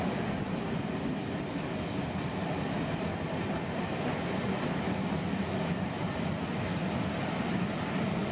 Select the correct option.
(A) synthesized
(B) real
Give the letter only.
B